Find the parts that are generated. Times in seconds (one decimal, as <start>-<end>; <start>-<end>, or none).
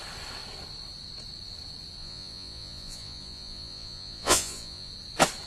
2.0-4.9